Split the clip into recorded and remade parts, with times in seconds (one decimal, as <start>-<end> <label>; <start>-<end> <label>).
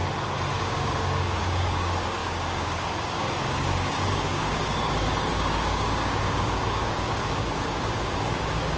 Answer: 0.0-0.6 recorded; 0.6-8.8 remade